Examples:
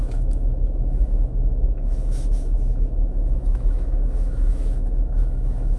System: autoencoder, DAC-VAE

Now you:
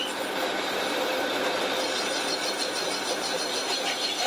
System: none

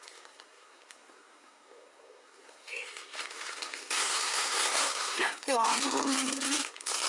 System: codec, SNAC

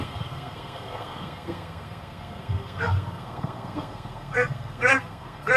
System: codec, SNAC